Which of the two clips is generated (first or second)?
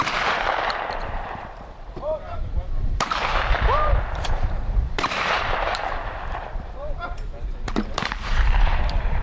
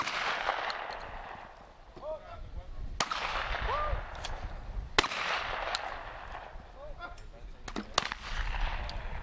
first